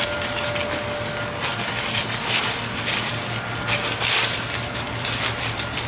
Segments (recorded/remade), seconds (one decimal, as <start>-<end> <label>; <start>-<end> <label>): 0.0-5.9 recorded